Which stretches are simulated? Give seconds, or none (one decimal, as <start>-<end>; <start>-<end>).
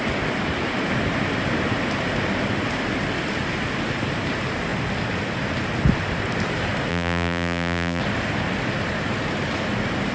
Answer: 6.9-8.0